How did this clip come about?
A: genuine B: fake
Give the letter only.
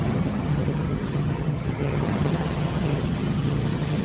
B